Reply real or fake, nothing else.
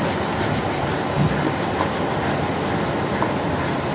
fake